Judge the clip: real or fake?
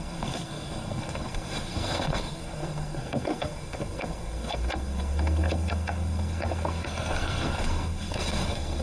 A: fake